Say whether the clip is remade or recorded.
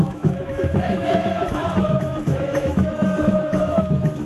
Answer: remade